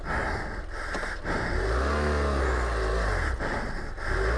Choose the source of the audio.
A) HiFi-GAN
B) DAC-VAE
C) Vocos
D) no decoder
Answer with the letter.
D